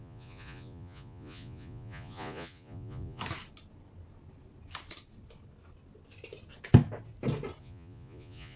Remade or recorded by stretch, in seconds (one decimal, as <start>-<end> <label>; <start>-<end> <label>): 0.0-3.2 remade; 3.2-7.6 recorded; 7.6-8.6 remade